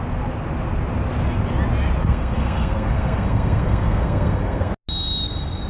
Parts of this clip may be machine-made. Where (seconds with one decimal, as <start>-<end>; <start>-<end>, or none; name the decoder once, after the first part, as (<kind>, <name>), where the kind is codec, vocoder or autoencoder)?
2.0-4.7 (codec, SNAC)